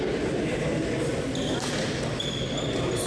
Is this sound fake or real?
real